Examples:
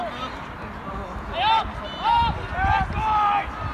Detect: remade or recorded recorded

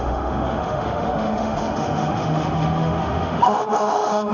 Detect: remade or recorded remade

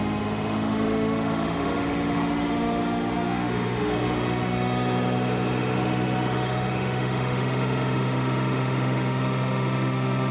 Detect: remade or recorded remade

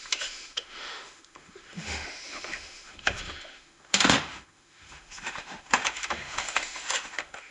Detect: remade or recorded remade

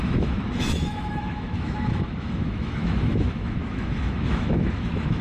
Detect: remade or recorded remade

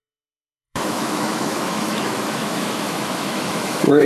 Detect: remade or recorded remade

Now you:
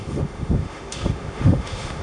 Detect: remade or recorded remade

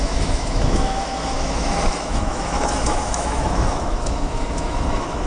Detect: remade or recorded remade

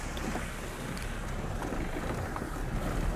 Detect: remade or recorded recorded